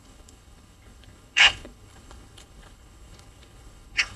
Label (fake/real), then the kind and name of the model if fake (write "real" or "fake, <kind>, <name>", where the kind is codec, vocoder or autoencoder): fake, codec, HILCodec